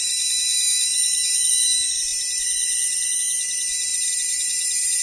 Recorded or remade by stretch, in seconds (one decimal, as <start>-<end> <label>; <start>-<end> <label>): 0.0-0.9 recorded; 0.9-1.5 remade; 1.5-3.9 recorded; 3.9-5.0 remade

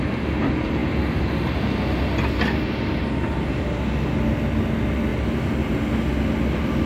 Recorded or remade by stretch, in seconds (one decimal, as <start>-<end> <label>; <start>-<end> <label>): 0.0-5.1 recorded; 5.1-5.8 remade; 5.8-6.9 recorded

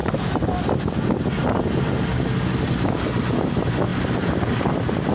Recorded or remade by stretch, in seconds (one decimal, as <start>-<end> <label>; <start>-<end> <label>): 0.0-3.9 recorded; 3.9-5.1 remade

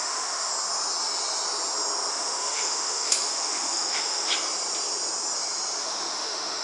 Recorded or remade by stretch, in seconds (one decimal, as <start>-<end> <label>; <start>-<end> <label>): 0.0-0.5 remade; 0.5-2.1 recorded; 2.1-4.3 remade; 4.3-5.8 recorded; 5.8-6.6 remade